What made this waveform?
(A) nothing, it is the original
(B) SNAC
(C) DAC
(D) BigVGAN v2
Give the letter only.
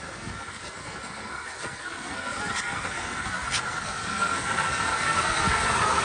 B